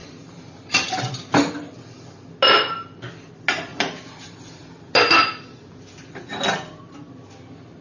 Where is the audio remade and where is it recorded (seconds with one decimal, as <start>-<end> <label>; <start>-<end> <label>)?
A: 0.0-1.7 remade; 1.7-3.7 recorded; 3.7-4.8 remade; 4.8-7.8 recorded